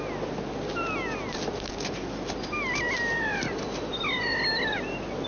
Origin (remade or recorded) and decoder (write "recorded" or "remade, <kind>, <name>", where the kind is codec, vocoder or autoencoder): recorded